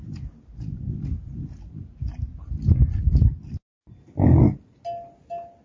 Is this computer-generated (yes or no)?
no